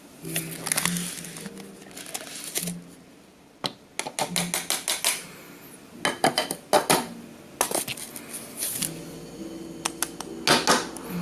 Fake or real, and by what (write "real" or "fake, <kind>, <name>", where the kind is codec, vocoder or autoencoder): real